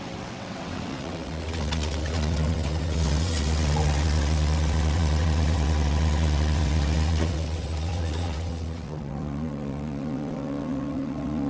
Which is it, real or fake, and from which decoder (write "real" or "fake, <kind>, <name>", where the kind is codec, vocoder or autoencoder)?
fake, vocoder, WaveNeXt